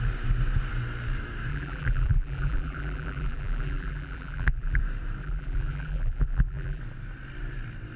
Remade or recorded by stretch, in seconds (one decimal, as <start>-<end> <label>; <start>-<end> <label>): 0.0-1.5 recorded; 1.5-4.8 remade; 4.8-5.2 recorded; 5.2-6.8 remade; 6.8-8.0 recorded